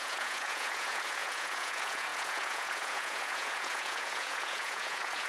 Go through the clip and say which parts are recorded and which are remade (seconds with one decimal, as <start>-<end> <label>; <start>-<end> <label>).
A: 0.0-5.3 remade